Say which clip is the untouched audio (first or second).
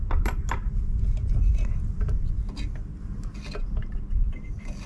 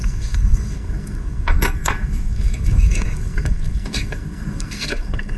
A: first